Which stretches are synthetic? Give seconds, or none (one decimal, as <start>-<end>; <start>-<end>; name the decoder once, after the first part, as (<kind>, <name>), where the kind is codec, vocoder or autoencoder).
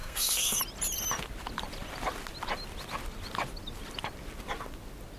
0.0-0.6 (codec, SNAC)